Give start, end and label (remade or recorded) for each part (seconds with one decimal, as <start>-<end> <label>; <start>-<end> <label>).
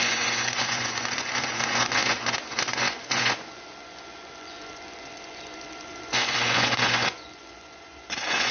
0.0-8.5 remade